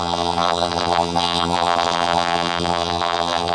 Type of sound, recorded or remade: remade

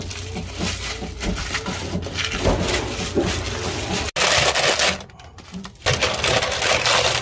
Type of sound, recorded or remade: recorded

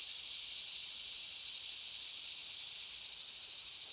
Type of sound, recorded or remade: remade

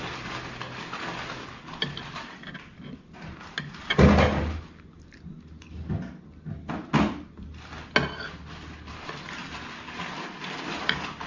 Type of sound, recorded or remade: recorded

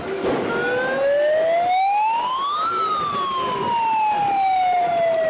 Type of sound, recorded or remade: recorded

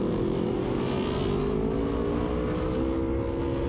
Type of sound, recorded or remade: recorded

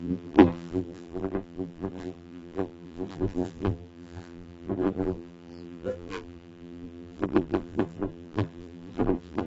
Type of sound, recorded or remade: remade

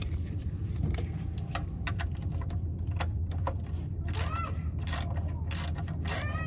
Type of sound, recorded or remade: remade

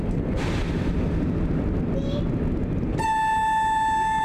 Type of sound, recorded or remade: recorded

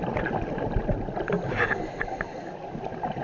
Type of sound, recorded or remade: recorded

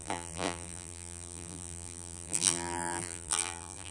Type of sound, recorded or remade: remade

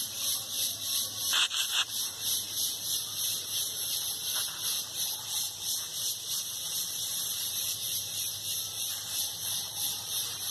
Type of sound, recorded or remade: remade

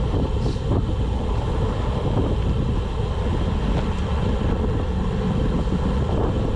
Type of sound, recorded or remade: recorded